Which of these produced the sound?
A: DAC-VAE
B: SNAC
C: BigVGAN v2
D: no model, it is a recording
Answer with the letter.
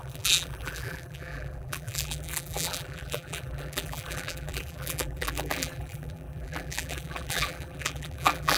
C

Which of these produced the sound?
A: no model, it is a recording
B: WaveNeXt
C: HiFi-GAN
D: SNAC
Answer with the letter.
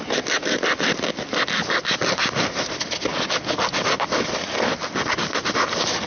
A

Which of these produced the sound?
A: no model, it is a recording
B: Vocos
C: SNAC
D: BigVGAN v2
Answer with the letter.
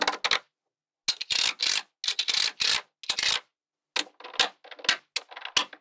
A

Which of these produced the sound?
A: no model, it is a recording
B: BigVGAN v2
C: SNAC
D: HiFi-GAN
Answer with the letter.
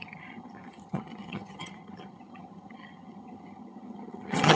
D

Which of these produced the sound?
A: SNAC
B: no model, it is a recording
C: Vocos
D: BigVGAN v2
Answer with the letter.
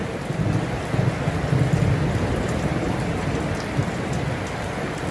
B